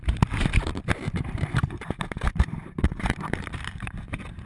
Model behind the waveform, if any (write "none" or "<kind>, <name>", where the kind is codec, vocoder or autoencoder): vocoder, BigVGAN v2